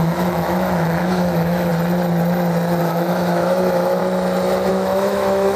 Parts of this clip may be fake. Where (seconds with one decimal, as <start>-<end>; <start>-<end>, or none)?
0.0-1.7; 2.8-4.0; 4.7-5.6